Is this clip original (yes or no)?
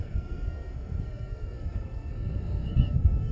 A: no